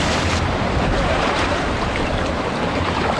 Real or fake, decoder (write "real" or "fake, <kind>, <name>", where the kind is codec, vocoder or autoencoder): fake, vocoder, BigVGAN v2